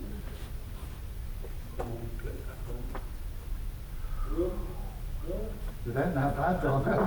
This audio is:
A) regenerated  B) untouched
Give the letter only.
B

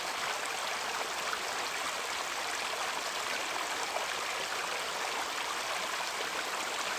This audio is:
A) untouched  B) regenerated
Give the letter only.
A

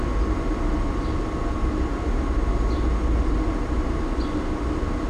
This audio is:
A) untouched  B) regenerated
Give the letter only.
A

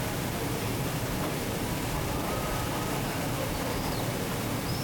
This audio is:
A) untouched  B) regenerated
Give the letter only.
B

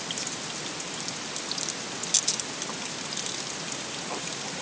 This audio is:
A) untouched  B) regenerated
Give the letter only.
A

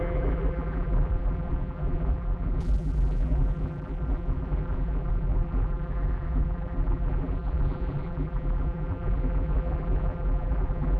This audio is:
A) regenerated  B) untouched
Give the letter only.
A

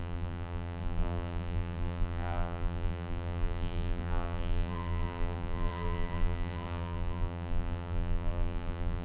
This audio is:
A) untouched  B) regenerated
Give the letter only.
B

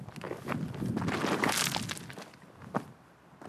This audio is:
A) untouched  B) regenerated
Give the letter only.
A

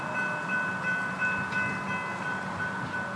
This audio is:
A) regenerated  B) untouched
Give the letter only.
B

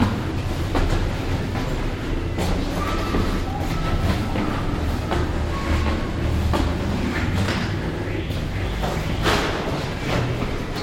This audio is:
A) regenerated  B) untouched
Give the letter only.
B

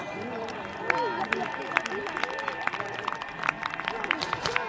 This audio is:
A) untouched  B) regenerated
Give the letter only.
B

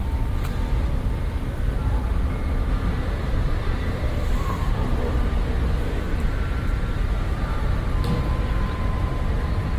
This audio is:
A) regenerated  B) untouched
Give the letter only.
A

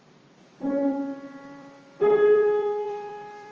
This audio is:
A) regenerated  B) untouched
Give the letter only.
A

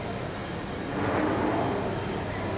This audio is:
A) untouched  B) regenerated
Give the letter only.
A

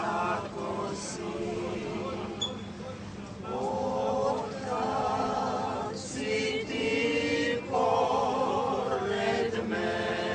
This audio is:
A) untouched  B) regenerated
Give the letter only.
A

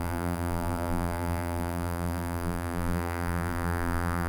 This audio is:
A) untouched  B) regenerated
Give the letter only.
B